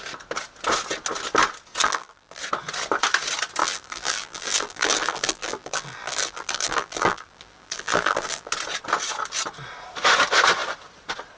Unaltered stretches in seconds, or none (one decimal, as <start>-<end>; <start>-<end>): 0.0-1.8; 2.4-3.6; 8.5-11.4